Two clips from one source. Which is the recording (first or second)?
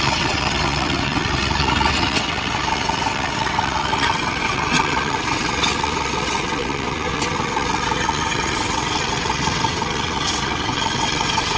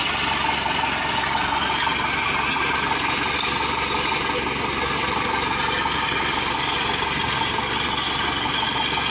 second